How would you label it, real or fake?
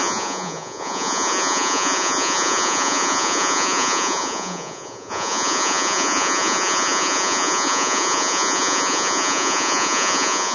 fake